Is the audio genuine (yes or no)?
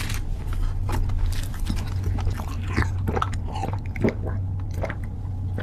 yes